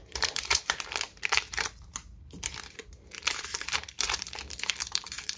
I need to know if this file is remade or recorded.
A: remade